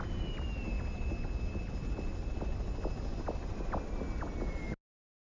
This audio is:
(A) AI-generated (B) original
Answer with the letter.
B